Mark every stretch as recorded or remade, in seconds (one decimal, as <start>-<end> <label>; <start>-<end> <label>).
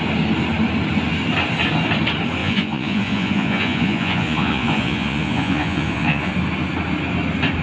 0.0-2.4 recorded; 2.4-6.3 remade; 6.3-7.6 recorded